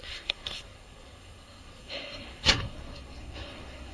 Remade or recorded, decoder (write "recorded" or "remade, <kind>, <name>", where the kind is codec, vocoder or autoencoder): remade, codec, SNAC